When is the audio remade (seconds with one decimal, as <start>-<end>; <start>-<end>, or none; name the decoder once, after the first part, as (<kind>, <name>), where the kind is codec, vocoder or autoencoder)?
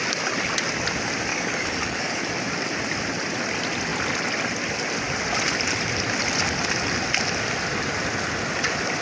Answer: 1.3-2.2 (codec, DAC)